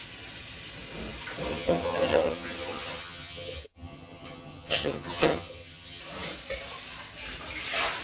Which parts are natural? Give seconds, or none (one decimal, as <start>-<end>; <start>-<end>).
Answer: 0.0-1.5; 6.0-8.0